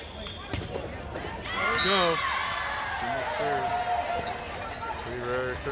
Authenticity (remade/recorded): recorded